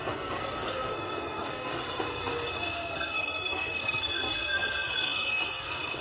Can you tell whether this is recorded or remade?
remade